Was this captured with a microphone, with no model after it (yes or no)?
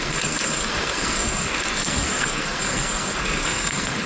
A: no